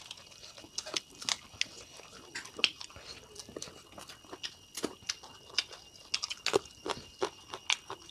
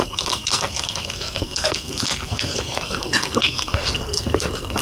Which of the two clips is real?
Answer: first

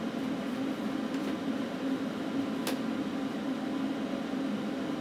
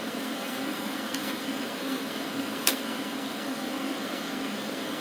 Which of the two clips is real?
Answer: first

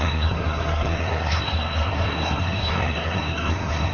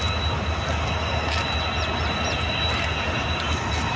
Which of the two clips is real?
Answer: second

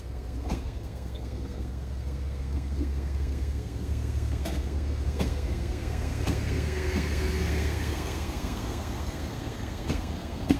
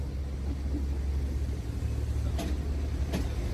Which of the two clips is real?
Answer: second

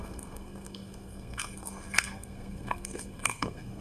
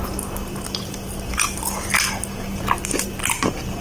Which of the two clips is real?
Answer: second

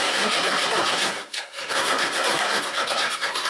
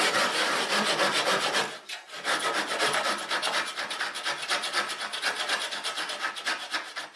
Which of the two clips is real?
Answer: second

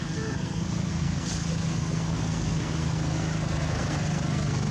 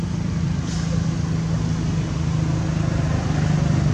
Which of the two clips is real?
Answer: second